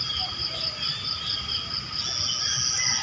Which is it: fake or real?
real